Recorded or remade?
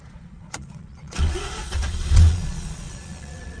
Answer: remade